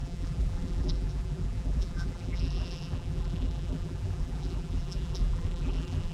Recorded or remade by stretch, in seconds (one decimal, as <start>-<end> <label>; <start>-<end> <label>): 0.0-6.1 remade